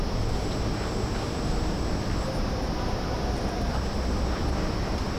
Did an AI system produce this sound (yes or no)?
no